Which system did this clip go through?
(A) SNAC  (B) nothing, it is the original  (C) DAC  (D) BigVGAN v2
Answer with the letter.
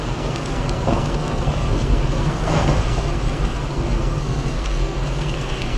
A